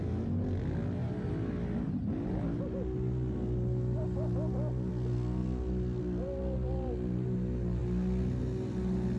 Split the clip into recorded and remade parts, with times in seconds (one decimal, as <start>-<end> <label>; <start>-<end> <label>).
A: 0.0-9.2 recorded